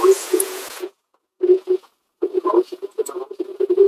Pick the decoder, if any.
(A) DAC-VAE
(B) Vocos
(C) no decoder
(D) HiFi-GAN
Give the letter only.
B